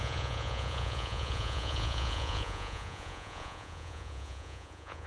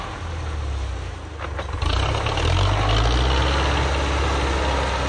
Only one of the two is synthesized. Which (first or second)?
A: first